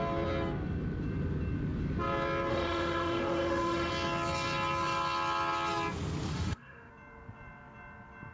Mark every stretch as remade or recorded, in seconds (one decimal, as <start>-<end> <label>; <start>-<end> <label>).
0.0-2.5 recorded; 2.5-3.9 remade; 3.9-6.3 recorded; 6.3-6.9 remade; 6.9-8.3 recorded